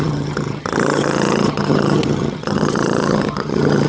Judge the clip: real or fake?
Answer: fake